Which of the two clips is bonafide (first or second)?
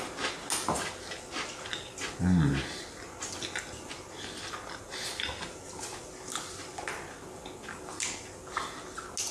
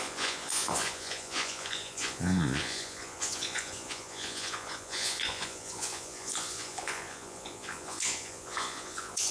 first